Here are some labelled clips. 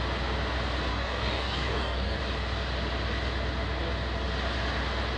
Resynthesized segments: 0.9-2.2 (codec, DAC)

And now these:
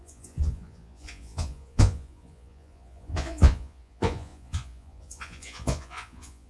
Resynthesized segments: 0.0-6.5 (vocoder, Vocos)

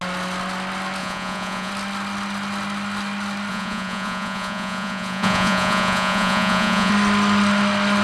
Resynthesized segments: 1.0-1.7 (vocoder, Vocos); 3.5-6.9

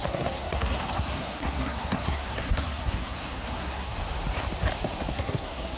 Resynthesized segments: 0.0-4.0 (codec, SNAC); 5.1-5.8

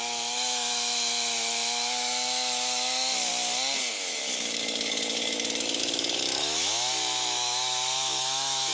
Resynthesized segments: 0.0-3.3 (autoencoder, DAC-VAE); 3.9-8.7